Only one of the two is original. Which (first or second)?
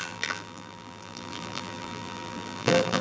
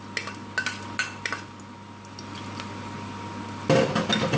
second